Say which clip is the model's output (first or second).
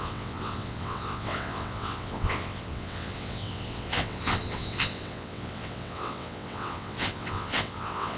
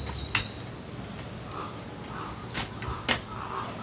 first